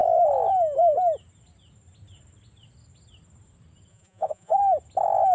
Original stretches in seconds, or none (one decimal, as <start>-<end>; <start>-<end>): 0.0-3.9; 4.6-5.3